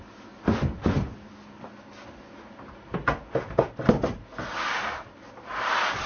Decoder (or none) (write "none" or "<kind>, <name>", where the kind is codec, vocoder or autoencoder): none